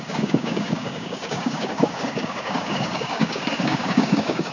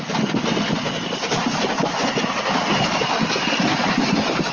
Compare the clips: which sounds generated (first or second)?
first